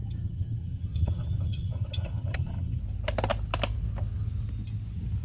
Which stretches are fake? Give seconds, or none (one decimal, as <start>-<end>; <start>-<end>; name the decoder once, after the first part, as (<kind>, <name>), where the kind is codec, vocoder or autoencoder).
0.0-2.8 (vocoder, HiFi-GAN)